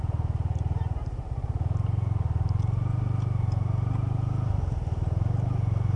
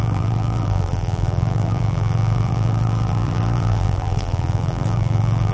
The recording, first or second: first